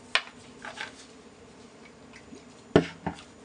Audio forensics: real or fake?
real